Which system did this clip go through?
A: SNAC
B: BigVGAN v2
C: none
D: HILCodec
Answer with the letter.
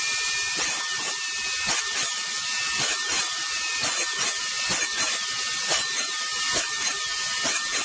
C